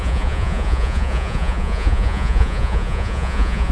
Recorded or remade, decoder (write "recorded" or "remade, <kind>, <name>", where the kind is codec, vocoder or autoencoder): remade, vocoder, Vocos